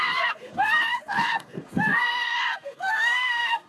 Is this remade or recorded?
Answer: remade